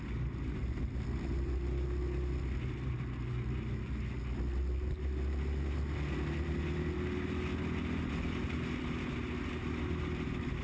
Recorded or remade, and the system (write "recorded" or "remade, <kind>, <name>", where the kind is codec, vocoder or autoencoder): recorded